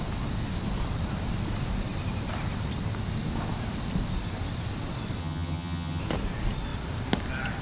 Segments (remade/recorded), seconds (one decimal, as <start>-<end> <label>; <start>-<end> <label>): 0.0-5.2 recorded; 5.2-6.0 remade; 6.0-7.6 recorded